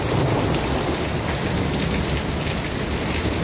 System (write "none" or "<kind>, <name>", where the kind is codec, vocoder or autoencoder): none